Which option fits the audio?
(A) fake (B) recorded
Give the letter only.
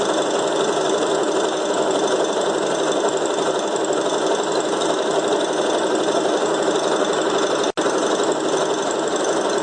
B